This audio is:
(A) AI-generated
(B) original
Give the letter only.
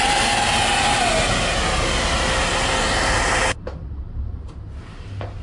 B